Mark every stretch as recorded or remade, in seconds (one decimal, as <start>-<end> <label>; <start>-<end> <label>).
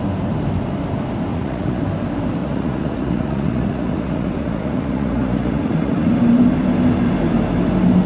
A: 0.0-1.3 recorded; 1.3-1.8 remade; 1.8-2.4 recorded; 2.4-6.1 remade; 6.1-8.1 recorded